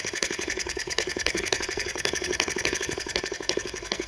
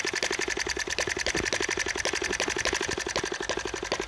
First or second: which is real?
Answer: second